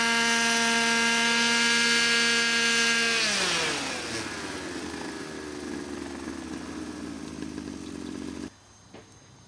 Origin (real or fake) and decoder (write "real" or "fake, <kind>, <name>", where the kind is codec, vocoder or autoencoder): real